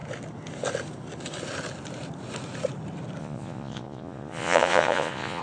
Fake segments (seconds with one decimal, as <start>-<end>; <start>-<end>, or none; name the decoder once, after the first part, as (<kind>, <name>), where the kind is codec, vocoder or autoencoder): 3.2-5.4 (vocoder, Vocos)